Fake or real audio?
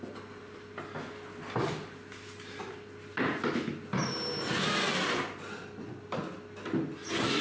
real